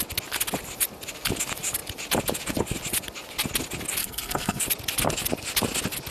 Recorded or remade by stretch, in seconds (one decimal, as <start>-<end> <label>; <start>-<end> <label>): 0.0-4.0 recorded; 4.0-4.6 remade; 4.6-6.1 recorded